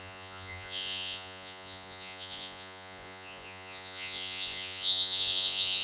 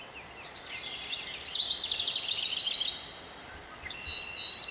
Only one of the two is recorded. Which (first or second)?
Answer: second